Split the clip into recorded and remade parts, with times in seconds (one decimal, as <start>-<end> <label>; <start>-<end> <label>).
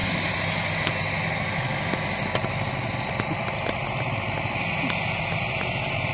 0.0-6.1 recorded